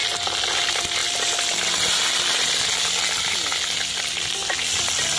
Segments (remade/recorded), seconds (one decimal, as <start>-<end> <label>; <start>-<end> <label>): 0.0-5.2 recorded